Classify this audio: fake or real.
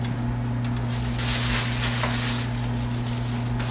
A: real